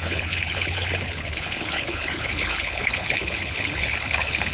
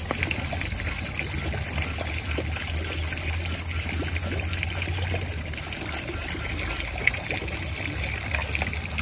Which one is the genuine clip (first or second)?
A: second